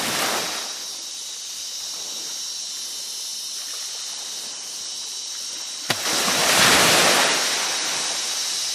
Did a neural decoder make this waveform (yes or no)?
no